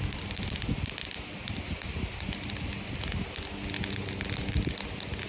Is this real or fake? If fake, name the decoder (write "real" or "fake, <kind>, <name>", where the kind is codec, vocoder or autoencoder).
real